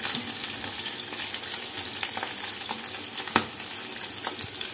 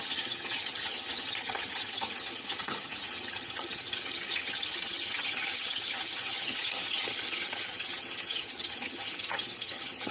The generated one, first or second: second